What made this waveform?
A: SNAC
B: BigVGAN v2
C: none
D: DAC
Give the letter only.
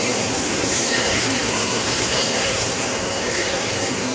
A